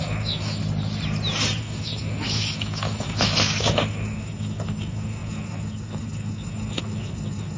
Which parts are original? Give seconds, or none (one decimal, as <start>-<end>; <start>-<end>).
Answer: 0.6-1.6